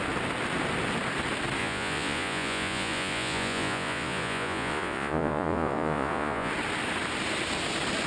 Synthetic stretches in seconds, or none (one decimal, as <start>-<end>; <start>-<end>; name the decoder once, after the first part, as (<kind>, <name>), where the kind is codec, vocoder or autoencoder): 1.6-6.5 (vocoder, Vocos)